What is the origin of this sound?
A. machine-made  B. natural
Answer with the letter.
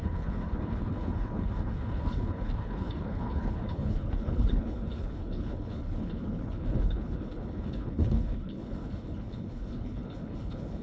A